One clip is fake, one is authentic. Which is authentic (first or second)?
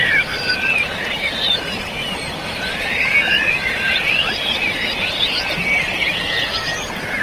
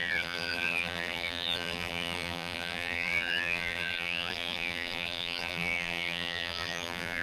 first